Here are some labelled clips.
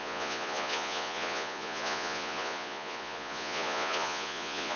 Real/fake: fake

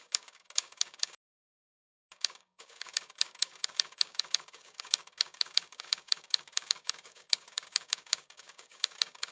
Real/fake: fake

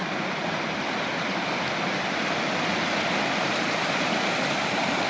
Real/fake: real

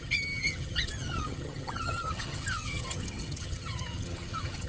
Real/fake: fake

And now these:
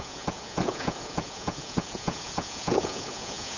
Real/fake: fake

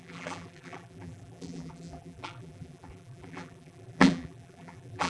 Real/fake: fake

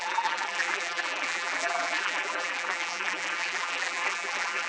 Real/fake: fake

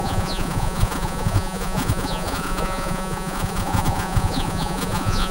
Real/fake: fake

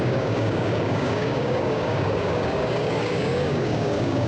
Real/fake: fake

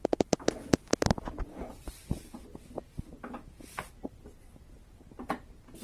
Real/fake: real